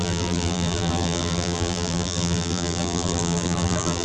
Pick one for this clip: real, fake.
fake